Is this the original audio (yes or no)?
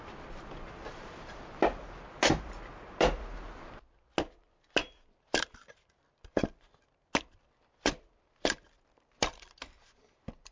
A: yes